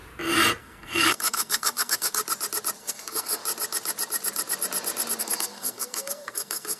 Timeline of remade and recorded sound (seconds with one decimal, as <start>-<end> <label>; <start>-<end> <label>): 0.0-0.6 recorded; 0.6-2.2 remade; 2.2-2.8 recorded; 2.8-3.4 remade; 3.4-5.2 recorded; 5.2-6.8 remade